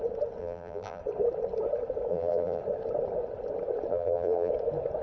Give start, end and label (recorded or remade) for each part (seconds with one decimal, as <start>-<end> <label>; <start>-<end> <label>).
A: 0.0-0.4 recorded; 0.4-1.0 remade; 1.0-2.1 recorded; 2.1-2.6 remade; 2.6-3.9 recorded; 3.9-4.5 remade; 4.5-5.0 recorded